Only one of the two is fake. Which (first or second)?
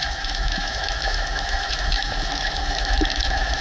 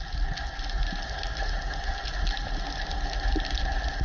first